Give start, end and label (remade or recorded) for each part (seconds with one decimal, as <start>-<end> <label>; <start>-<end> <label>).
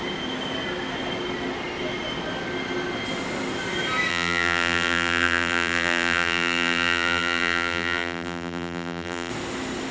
0.0-4.1 recorded; 4.1-9.3 remade; 9.3-9.9 recorded